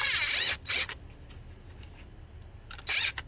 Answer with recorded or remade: recorded